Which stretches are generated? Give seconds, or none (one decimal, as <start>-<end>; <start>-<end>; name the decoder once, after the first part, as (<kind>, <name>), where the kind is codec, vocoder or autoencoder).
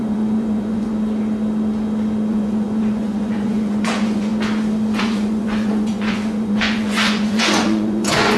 0.0-0.9 (vocoder, Vocos); 2.3-4.3; 5.0-8.4